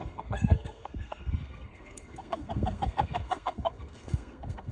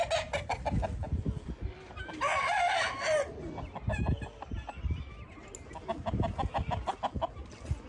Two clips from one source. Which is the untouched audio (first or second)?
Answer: second